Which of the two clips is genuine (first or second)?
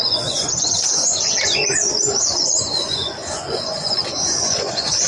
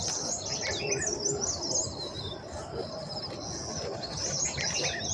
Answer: second